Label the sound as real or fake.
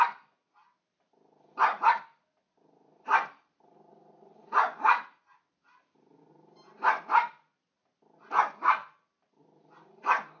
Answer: real